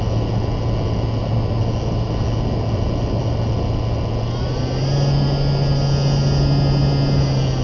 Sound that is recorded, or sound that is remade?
recorded